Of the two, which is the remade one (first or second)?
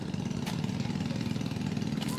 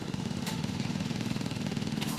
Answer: second